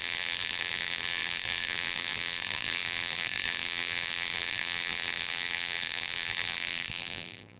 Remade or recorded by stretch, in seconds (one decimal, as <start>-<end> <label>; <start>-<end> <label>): 0.0-7.6 remade